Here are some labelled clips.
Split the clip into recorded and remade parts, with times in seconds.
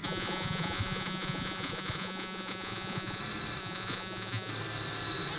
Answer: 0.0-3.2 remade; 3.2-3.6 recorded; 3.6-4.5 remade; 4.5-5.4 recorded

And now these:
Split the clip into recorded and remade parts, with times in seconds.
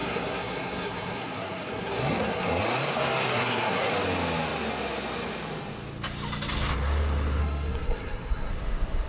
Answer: 0.0-2.6 remade; 2.6-3.3 recorded; 3.3-3.9 remade; 3.9-7.4 recorded; 7.4-8.5 remade; 8.5-9.1 recorded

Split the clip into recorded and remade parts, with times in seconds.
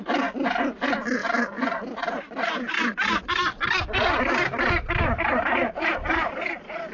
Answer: 0.0-6.9 recorded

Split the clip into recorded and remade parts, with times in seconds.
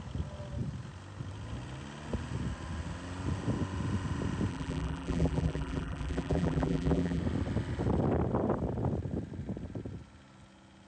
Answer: 0.0-4.5 recorded; 4.5-7.2 remade; 7.2-10.9 recorded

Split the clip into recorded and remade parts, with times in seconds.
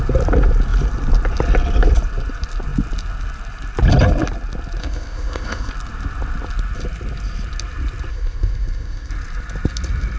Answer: 0.0-4.8 recorded; 4.8-5.7 remade; 5.7-8.1 recorded; 8.1-9.1 remade; 9.1-10.2 recorded